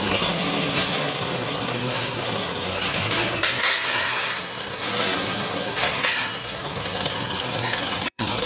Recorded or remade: remade